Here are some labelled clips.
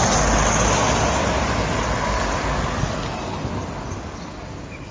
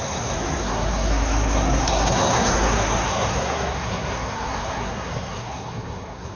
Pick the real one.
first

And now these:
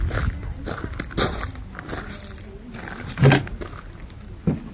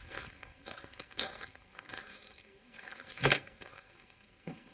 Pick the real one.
first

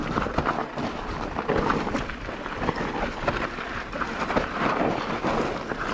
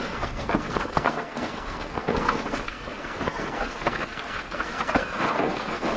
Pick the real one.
first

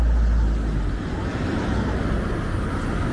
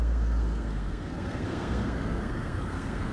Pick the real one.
first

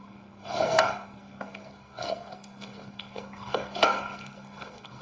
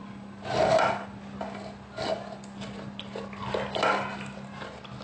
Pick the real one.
second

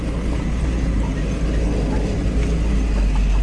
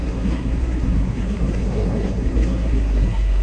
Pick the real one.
first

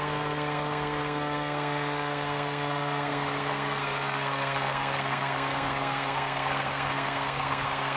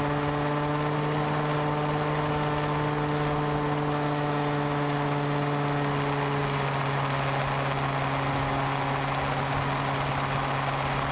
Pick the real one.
second